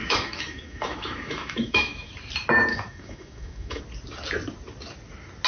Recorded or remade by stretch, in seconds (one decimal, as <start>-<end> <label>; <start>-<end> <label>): 0.0-2.1 remade; 2.1-2.7 recorded; 2.7-3.8 remade; 3.8-5.5 recorded